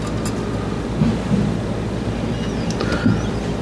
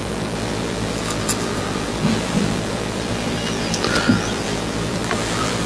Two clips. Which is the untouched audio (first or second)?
first